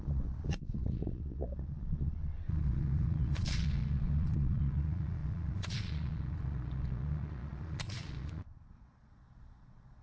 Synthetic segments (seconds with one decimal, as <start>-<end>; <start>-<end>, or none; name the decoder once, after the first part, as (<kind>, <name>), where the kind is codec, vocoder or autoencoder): 0.0-10.0 (vocoder, Vocos)